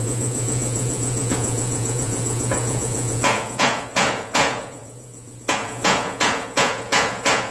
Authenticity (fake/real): fake